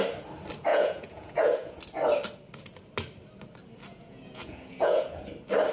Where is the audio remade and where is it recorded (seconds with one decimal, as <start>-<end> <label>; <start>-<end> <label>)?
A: 0.0-0.7 recorded; 0.7-1.8 remade; 1.8-3.9 recorded; 3.9-5.2 remade; 5.2-5.7 recorded